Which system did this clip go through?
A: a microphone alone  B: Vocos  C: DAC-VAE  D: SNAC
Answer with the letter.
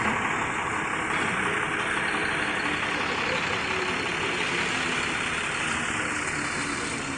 A